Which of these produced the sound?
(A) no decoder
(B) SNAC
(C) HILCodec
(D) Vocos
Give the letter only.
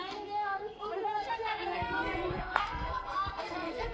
B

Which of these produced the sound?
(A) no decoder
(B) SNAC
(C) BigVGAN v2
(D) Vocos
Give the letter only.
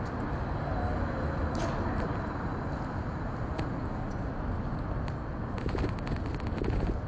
A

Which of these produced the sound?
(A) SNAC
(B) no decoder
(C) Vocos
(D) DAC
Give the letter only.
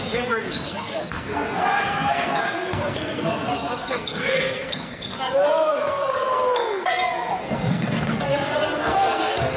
A